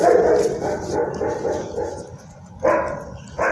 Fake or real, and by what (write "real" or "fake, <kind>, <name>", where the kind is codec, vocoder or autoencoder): real